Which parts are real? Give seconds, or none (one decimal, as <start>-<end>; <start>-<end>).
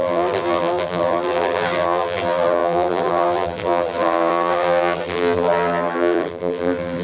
none